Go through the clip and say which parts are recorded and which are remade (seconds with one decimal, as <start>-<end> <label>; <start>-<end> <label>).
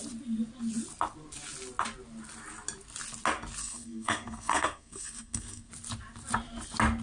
0.0-3.6 recorded; 3.6-5.7 remade; 5.7-7.0 recorded